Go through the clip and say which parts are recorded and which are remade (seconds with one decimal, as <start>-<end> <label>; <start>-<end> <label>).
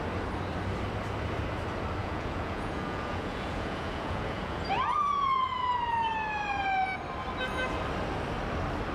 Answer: 0.0-2.0 recorded; 2.0-4.6 remade; 4.6-8.9 recorded